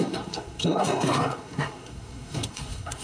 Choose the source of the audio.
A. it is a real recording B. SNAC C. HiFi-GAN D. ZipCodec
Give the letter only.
B